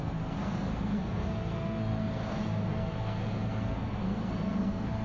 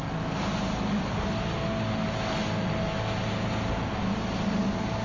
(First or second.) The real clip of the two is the second